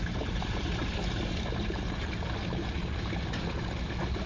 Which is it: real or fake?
real